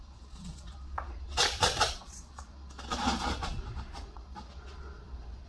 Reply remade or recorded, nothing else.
remade